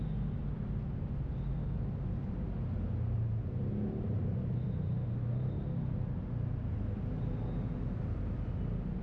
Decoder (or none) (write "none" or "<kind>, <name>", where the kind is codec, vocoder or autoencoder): none